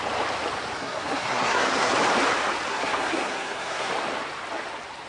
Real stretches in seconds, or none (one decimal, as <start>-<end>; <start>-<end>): 0.0-0.8; 1.9-2.7; 3.9-5.1